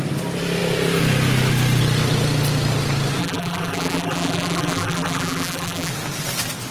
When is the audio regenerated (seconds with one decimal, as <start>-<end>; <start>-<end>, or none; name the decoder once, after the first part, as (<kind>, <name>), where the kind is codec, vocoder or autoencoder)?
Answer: 3.2-5.9 (vocoder, BigVGAN v2)